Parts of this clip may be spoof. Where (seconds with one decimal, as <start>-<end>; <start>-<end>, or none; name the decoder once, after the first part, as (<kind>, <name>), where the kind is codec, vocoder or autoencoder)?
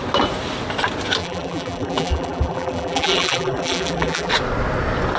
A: 1.2-4.3 (vocoder, BigVGAN v2)